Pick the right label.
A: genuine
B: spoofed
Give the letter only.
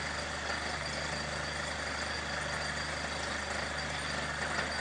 A